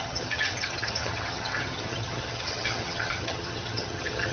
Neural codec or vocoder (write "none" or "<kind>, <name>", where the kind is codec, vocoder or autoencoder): vocoder, HiFi-GAN